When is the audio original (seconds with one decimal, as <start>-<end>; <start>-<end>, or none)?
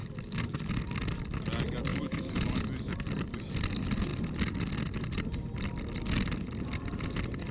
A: 0.0-1.9; 2.6-7.5